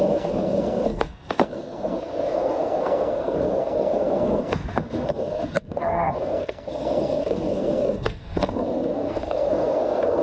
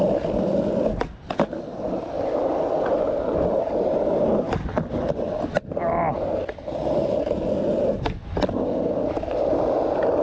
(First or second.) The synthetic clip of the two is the first